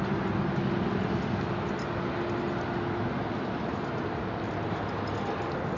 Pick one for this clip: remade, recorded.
recorded